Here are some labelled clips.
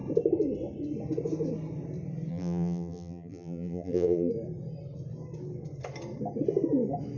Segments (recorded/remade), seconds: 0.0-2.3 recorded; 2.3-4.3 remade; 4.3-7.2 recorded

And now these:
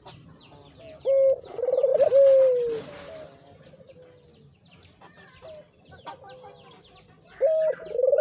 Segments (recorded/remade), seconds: 0.0-8.2 recorded

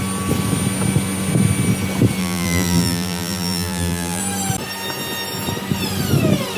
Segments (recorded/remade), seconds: 0.0-2.2 recorded; 2.2-4.2 remade; 4.2-6.6 recorded

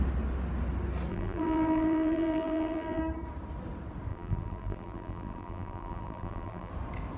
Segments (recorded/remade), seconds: 0.0-1.1 recorded; 1.1-3.0 remade; 3.0-4.1 recorded; 4.1-6.7 remade; 6.7-7.2 recorded

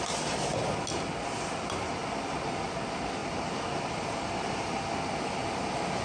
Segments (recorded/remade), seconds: 0.0-6.0 recorded

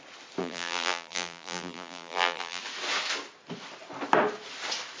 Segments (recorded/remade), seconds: 0.0-0.4 recorded; 0.4-2.6 remade; 2.6-5.0 recorded